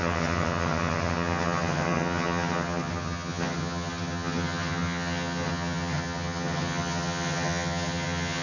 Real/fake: fake